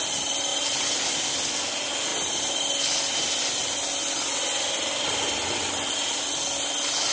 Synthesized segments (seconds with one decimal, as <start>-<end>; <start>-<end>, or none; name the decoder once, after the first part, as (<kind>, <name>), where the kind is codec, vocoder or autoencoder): none